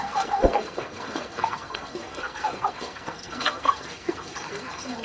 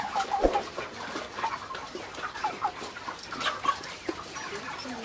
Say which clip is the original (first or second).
second